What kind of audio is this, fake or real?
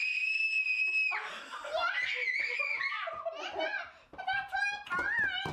real